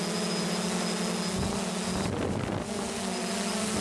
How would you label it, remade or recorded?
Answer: recorded